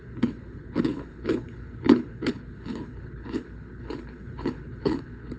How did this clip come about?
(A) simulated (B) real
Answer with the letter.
A